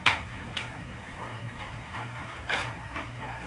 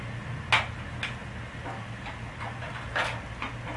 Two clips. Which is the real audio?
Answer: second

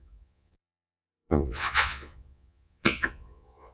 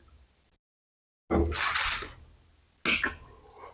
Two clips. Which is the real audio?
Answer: second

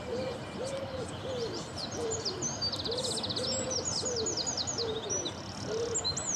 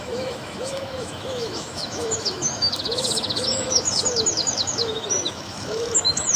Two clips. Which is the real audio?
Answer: first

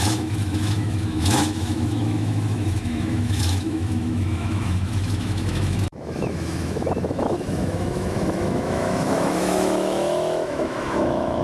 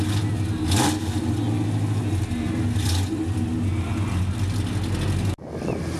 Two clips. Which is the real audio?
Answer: second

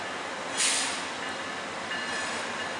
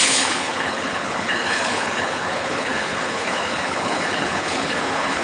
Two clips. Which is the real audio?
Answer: first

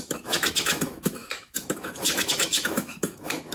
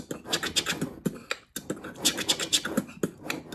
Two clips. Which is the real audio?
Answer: second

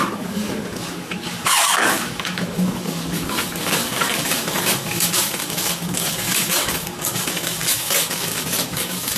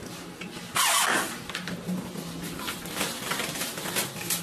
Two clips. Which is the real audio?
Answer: second